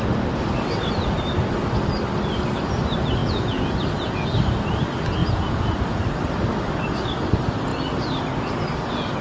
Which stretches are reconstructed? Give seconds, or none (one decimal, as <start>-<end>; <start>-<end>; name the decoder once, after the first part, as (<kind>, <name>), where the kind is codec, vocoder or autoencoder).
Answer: 3.2-3.7 (vocoder, Vocos); 5.2-6.0